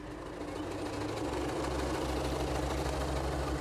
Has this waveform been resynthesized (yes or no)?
no